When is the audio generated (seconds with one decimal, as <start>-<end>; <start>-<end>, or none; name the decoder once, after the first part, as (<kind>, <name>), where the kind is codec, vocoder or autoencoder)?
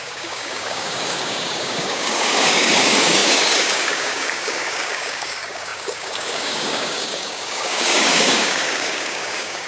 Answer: 0.0-9.7 (codec, DAC)